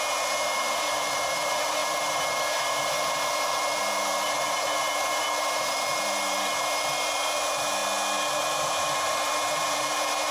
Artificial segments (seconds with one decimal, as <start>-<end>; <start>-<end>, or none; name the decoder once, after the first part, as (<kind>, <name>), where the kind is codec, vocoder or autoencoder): 0.0-7.8 (vocoder, BigVGAN v2); 8.4-10.3